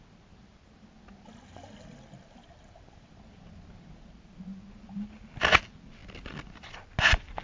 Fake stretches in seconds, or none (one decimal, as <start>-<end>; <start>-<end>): none